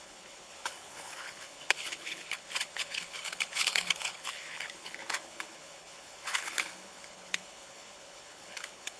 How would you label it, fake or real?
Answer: fake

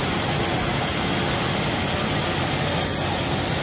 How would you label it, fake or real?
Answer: real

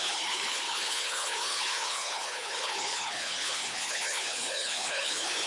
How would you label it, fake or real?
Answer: fake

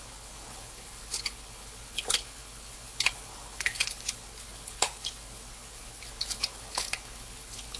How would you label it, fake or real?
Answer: fake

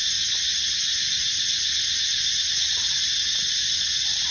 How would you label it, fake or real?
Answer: real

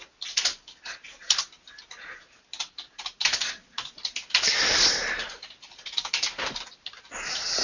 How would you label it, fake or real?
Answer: real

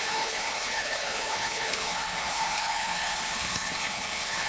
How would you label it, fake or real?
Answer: fake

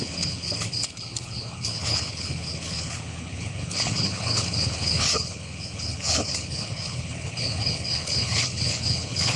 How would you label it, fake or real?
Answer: fake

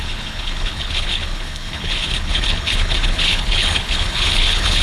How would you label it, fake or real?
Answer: fake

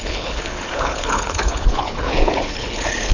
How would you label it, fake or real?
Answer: fake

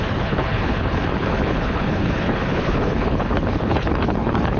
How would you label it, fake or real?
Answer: fake